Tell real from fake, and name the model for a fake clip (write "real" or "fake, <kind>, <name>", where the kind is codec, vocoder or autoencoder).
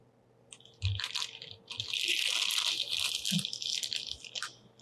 real